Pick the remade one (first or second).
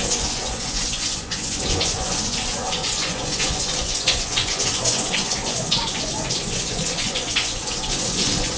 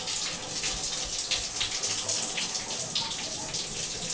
first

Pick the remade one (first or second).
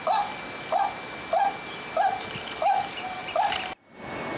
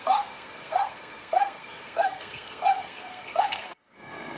second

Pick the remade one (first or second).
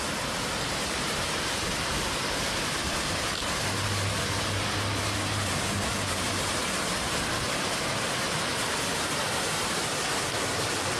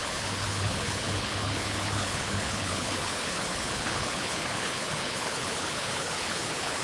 second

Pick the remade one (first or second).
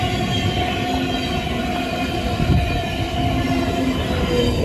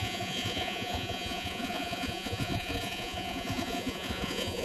second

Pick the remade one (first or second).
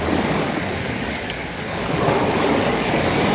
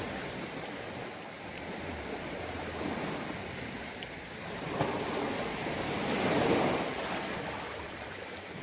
first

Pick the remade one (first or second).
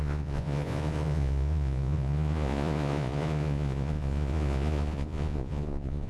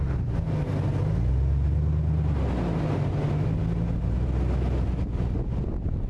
first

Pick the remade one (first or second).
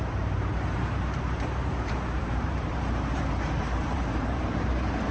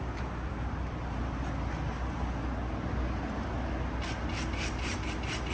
first